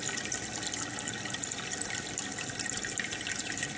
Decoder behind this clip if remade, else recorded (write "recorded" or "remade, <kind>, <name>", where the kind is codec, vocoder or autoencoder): recorded